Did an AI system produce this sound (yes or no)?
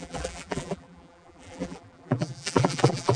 yes